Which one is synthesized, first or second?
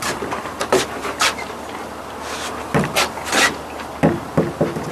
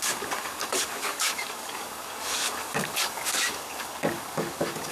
second